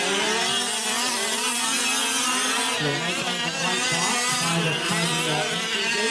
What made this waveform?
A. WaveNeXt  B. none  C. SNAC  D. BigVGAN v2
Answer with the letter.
B